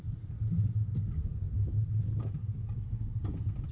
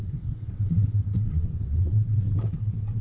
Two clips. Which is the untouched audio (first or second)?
first